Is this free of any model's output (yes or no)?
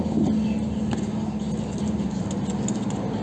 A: yes